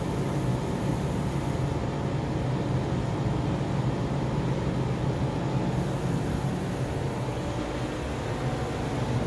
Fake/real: real